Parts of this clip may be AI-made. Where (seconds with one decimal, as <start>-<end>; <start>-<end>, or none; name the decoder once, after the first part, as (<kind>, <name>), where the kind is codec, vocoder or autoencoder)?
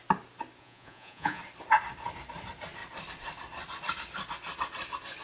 0.6-1.4 (vocoder, Vocos)